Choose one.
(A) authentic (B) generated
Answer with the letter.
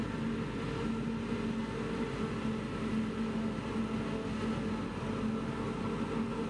A